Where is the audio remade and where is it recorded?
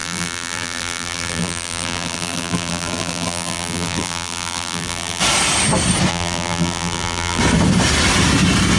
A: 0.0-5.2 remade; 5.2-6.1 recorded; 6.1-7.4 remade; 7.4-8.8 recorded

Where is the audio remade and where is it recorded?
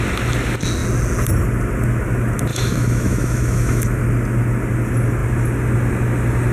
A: 0.0-2.5 recorded; 2.5-4.0 remade; 4.0-6.5 recorded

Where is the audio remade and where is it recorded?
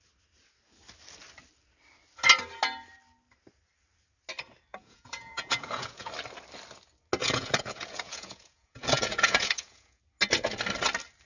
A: 0.0-4.7 recorded; 4.7-6.1 remade; 6.1-7.2 recorded; 7.2-10.0 remade; 10.0-11.3 recorded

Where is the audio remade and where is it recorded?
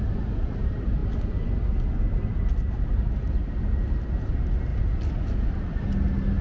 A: 0.0-6.4 recorded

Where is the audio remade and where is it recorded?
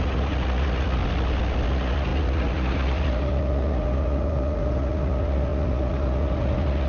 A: 0.0-1.0 remade; 1.0-1.7 recorded; 1.7-6.9 remade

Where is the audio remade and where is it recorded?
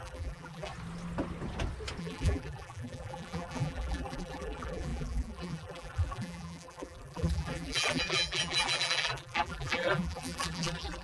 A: 0.0-0.7 remade; 0.7-2.0 recorded; 2.0-11.0 remade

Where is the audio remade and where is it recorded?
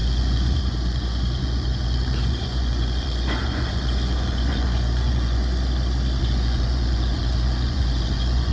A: 0.0-5.4 remade; 5.4-6.2 recorded; 6.2-8.5 remade